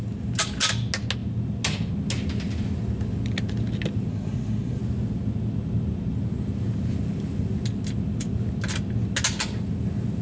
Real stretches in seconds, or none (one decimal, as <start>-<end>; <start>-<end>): 0.0-4.1; 4.8-10.2